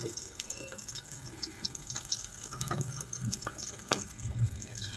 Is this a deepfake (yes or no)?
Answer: yes